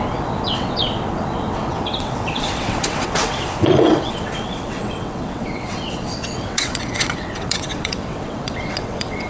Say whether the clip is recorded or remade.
remade